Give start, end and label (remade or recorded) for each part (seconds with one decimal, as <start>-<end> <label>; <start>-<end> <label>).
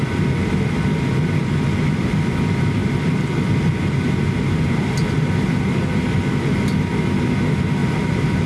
0.0-7.8 recorded; 7.8-8.5 remade